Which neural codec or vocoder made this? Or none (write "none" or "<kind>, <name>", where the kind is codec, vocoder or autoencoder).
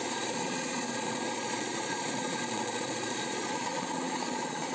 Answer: vocoder, Vocos